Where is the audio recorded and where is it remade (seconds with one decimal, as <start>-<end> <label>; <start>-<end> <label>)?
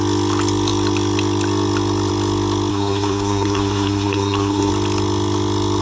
0.0-2.7 recorded; 2.7-4.7 remade; 4.7-5.8 recorded